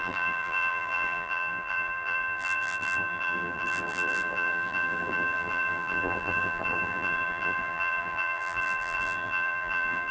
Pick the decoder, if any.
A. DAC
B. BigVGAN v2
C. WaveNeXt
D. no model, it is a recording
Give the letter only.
B